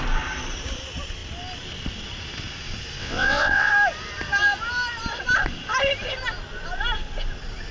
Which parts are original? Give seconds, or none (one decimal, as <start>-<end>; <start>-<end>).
0.0-3.0; 3.7-7.7